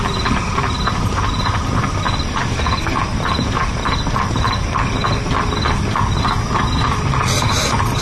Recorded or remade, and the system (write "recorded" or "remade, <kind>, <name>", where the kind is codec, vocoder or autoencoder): recorded